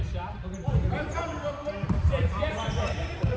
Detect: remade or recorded remade